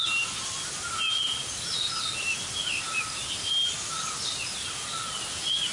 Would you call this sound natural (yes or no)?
yes